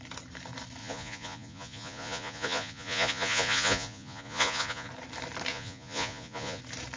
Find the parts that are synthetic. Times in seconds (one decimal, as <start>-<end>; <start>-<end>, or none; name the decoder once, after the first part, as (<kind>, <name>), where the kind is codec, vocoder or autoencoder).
0.8-4.9 (vocoder, Vocos); 5.5-6.6